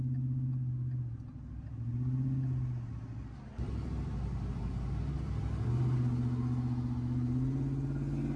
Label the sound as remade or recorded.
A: recorded